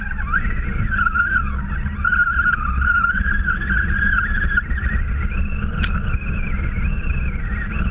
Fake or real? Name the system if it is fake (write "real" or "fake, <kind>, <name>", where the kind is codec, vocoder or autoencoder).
real